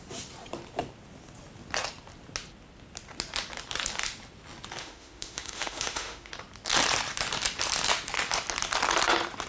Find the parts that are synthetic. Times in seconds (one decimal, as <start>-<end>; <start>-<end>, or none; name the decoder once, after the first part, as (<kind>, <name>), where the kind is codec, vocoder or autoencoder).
4.8-6.3 (autoencoder, DAC-VAE)